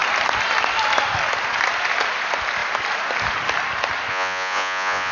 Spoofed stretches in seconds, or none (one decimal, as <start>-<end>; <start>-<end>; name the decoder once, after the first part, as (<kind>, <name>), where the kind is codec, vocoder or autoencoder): 4.1-5.1 (vocoder, Vocos)